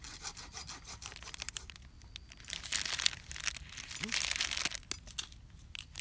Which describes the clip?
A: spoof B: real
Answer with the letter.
B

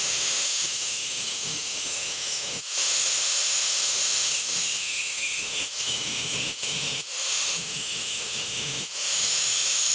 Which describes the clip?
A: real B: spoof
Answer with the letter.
B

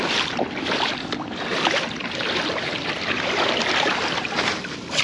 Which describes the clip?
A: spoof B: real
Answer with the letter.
A